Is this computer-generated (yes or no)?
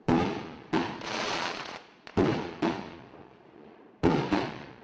yes